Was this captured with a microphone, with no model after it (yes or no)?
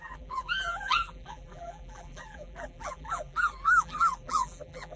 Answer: no